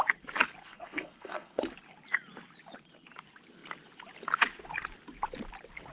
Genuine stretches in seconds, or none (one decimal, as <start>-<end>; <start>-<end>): 0.0-0.6; 1.6-5.9